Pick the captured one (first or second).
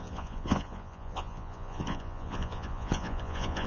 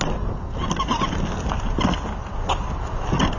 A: second